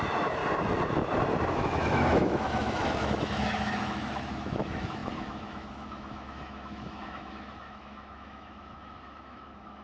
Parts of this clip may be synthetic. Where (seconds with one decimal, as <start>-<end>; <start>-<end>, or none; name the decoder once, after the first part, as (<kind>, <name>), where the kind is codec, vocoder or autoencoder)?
0.0-0.4 (autoencoder, DAC-VAE); 1.5-9.8